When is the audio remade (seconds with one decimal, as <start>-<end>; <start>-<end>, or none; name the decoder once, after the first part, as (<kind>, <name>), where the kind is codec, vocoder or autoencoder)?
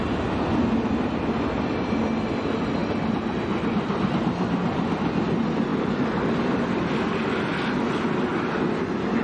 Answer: none